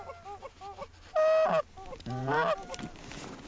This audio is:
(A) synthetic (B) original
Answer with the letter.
B